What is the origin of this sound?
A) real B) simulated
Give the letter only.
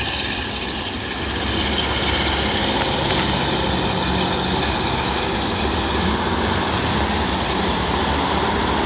A